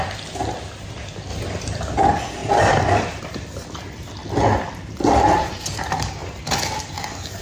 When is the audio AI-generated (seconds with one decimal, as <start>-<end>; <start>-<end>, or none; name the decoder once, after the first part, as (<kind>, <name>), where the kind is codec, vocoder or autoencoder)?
2.4-3.2 (vocoder, BigVGAN v2)